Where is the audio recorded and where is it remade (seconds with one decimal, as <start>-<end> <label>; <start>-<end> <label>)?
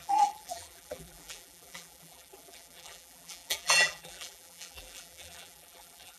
0.0-6.2 remade